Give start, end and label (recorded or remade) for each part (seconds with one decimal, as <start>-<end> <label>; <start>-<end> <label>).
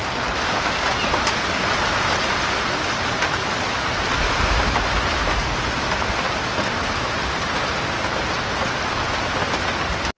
0.0-0.9 remade; 0.9-10.2 recorded